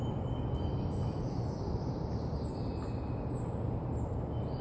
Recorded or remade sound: recorded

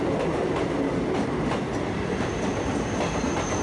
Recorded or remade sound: recorded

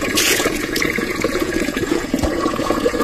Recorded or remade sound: remade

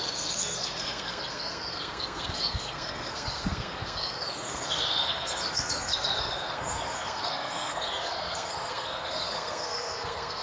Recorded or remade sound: remade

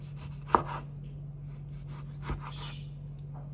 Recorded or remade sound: recorded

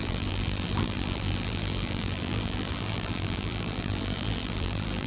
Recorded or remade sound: remade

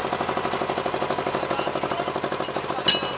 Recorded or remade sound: recorded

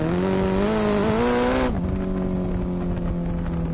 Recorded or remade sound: recorded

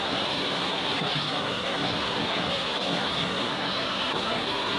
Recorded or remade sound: remade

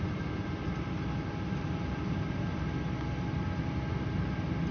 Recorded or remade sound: recorded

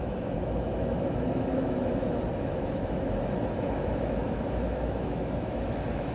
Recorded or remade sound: remade